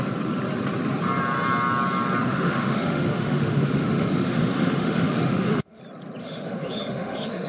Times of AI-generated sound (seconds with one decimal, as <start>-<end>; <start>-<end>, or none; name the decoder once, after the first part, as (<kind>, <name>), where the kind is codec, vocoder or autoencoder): 2.2-5.8 (autoencoder, DAC-VAE); 6.2-7.5